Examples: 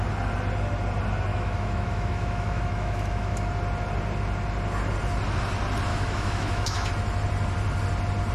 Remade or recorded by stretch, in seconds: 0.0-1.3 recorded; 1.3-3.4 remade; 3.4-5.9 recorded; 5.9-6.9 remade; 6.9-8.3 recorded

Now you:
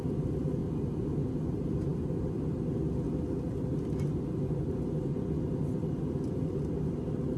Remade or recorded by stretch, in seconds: 0.0-7.4 recorded

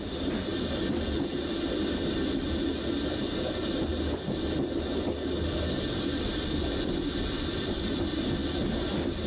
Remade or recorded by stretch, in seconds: 0.0-9.3 recorded

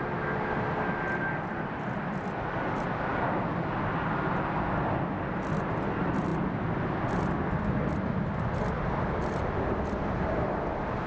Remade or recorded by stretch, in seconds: 0.0-11.1 recorded

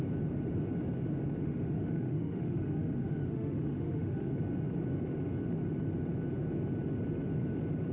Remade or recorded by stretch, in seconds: 0.0-1.4 recorded; 1.4-4.3 remade; 4.3-7.9 recorded

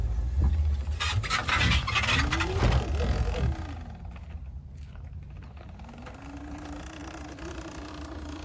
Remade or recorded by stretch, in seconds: 0.0-8.4 recorded